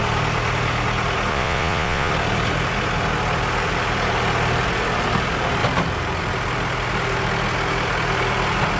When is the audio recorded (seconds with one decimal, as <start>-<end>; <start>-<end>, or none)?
0.0-1.3; 2.1-8.8